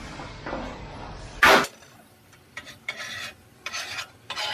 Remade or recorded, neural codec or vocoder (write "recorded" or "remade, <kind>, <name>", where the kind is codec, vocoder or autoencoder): remade, vocoder, BigVGAN v2